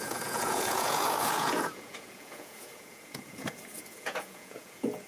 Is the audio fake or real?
fake